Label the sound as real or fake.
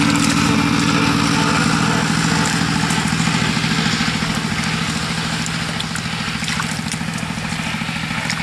real